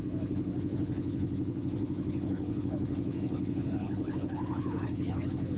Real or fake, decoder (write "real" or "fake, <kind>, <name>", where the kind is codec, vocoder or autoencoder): fake, codec, HILCodec